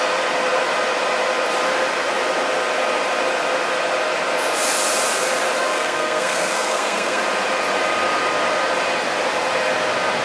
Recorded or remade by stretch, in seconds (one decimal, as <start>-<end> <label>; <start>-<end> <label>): 0.0-5.6 recorded; 5.6-7.2 remade; 7.2-10.2 recorded